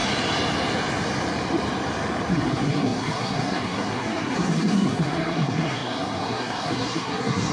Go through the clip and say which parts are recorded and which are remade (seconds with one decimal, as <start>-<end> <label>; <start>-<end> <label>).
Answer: 0.0-2.3 recorded; 2.3-7.5 remade